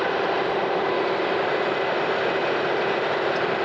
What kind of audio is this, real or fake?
real